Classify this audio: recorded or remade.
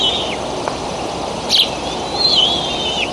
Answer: recorded